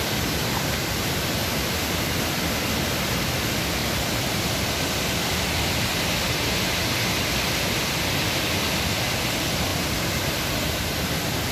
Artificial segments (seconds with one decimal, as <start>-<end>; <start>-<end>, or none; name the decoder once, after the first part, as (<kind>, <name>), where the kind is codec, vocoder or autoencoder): 3.8-4.7 (vocoder, BigVGAN v2); 9.7-10.5